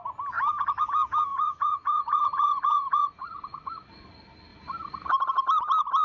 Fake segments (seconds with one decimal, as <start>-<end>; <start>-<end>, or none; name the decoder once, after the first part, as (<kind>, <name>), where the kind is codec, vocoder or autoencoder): 1.3-4.1 (vocoder, Vocos)